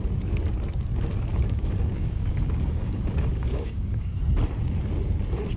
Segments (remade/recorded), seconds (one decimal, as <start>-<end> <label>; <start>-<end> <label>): 0.0-1.3 recorded; 1.3-4.1 remade; 4.1-5.6 recorded